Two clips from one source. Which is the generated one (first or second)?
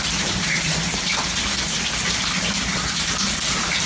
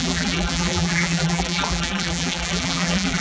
second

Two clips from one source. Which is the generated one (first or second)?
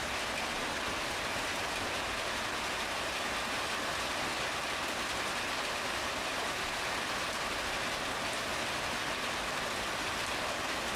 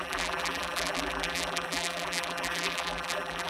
second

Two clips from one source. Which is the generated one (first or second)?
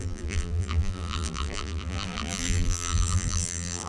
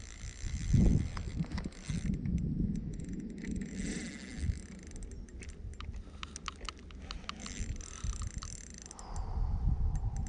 first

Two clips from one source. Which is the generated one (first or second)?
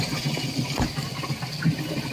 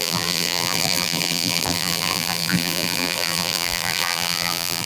second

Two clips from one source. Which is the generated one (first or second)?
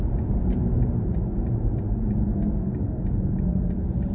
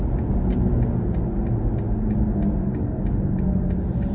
first